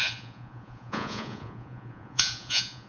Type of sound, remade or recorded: remade